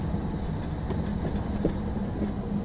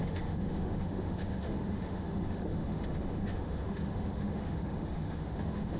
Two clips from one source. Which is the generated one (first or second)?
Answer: second